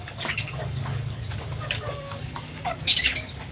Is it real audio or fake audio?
fake